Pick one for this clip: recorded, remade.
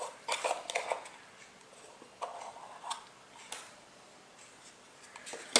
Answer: recorded